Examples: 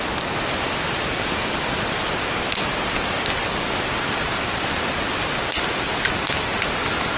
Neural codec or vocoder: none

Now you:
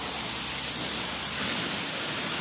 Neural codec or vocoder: none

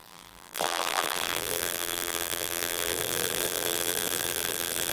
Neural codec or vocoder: vocoder, BigVGAN v2